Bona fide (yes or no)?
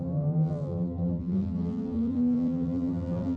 no